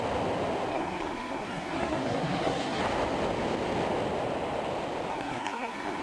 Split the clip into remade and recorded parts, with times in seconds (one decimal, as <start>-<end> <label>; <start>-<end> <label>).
0.0-0.7 recorded; 0.7-2.8 remade; 2.8-5.1 recorded; 5.1-6.0 remade